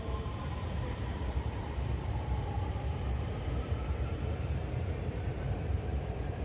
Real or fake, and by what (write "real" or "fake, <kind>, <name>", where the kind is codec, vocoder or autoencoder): fake, vocoder, BigVGAN v2